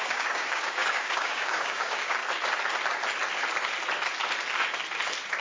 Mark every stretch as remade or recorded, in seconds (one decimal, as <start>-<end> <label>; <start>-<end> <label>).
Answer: 0.0-2.2 remade; 2.2-5.4 recorded